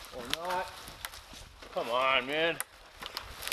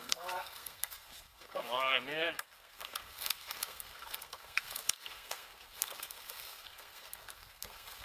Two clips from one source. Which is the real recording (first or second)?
first